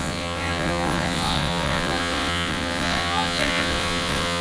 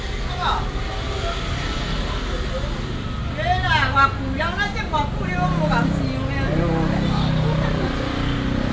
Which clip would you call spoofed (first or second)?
first